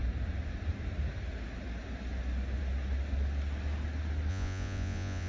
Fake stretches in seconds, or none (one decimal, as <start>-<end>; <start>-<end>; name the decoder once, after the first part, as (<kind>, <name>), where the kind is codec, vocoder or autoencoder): 4.3-5.3 (vocoder, Vocos)